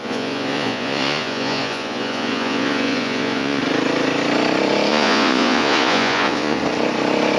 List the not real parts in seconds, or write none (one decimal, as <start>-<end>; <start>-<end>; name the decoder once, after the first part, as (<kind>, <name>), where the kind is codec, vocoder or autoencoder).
0.0-3.6 (vocoder, Vocos); 4.9-6.6